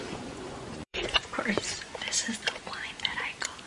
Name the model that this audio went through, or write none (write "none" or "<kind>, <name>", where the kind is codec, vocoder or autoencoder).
vocoder, Vocos